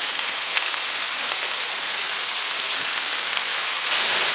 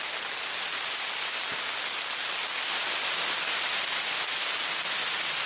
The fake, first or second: first